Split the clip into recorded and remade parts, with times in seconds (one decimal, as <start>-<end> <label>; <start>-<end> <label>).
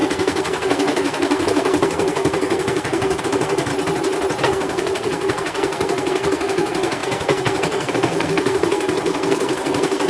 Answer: 0.0-3.7 remade; 3.7-4.4 recorded; 4.4-10.1 remade